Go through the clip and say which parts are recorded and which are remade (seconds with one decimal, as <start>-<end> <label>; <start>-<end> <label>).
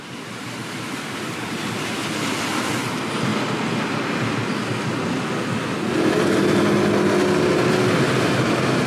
0.0-2.0 remade; 2.0-2.7 recorded; 2.7-3.3 remade; 3.3-8.9 recorded